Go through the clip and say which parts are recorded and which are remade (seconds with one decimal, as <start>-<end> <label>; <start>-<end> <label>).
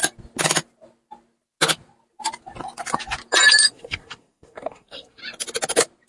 0.0-3.7 recorded; 3.7-5.2 remade; 5.2-6.1 recorded